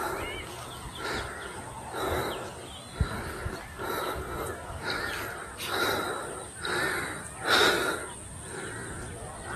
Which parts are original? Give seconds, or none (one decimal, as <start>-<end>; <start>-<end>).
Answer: 0.0-9.6